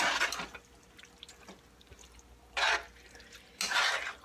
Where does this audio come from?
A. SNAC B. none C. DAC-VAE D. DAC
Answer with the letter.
B